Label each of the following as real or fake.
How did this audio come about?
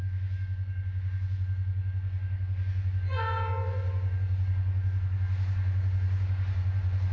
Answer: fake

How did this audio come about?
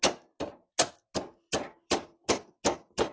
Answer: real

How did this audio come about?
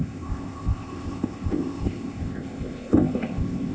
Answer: fake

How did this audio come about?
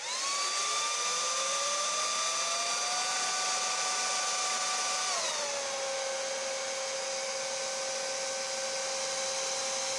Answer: real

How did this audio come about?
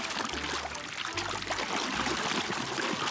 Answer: real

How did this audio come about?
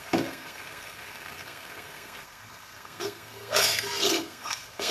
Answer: fake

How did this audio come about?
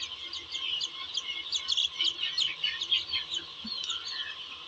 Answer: real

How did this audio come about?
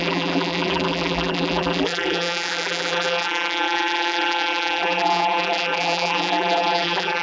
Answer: fake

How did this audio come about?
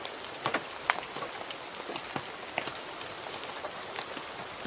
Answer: real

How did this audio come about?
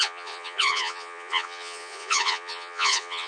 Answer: fake